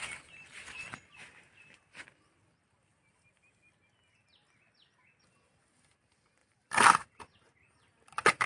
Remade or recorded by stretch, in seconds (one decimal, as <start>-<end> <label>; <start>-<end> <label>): 0.0-8.5 recorded